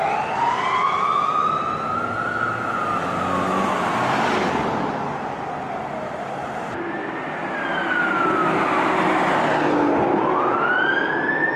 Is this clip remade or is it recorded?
recorded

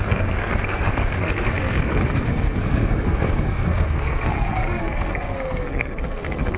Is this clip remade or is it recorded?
remade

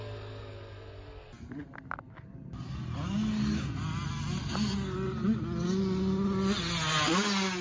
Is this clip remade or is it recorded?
recorded